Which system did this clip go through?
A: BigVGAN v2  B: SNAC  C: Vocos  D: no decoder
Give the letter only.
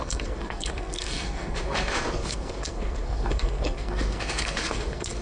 B